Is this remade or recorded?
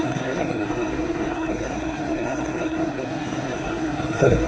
remade